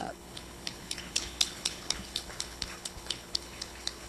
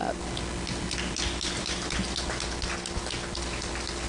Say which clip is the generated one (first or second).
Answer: first